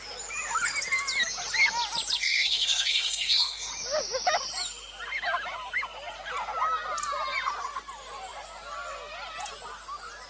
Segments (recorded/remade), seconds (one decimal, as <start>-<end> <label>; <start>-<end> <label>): 0.0-2.2 recorded; 2.2-3.7 remade; 3.7-10.3 recorded